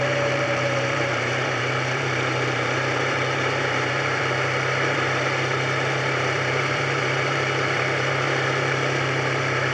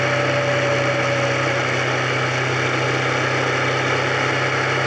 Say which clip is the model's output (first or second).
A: first